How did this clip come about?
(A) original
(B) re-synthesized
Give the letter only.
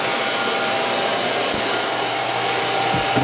A